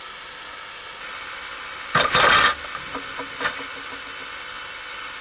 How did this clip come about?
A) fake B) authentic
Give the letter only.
B